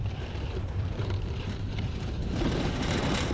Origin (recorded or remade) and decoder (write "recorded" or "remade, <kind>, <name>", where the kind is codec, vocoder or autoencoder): remade, vocoder, BigVGAN v2